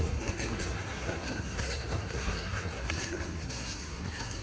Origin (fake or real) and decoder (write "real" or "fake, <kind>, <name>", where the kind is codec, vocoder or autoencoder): fake, codec, SNAC